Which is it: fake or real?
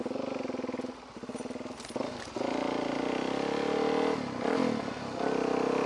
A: real